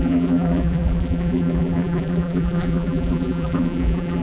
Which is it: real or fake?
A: fake